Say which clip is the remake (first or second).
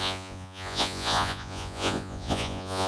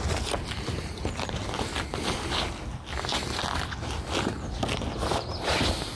first